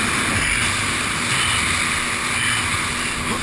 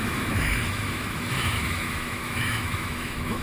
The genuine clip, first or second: first